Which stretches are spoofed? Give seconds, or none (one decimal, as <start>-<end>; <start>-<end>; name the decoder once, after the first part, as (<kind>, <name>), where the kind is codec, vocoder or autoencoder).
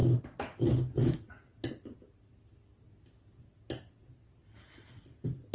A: none